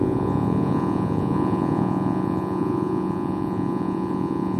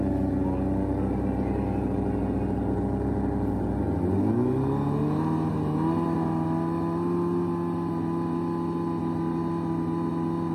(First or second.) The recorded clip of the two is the second